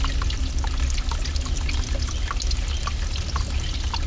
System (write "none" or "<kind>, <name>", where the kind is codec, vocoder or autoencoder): none